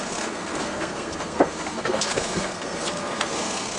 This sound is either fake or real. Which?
fake